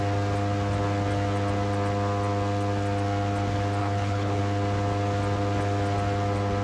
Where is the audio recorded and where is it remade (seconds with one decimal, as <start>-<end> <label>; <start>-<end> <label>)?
0.0-3.8 recorded; 3.8-4.4 remade; 4.4-6.6 recorded